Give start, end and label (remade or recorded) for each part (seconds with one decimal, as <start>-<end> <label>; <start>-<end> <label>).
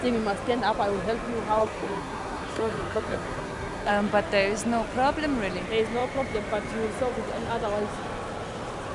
0.0-1.6 recorded; 1.6-3.9 remade; 3.9-8.9 recorded